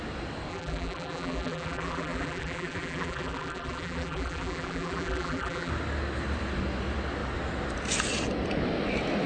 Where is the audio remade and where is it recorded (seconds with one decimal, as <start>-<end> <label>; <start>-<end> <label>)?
0.0-0.5 recorded; 0.5-5.7 remade; 5.7-9.3 recorded